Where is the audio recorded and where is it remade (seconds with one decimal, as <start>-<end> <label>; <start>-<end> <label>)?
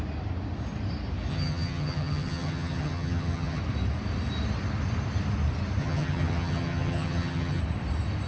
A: 0.0-1.3 recorded; 1.3-3.6 remade; 3.6-5.8 recorded; 5.8-7.6 remade; 7.6-8.3 recorded